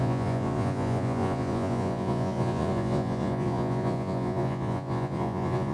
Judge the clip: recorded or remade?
remade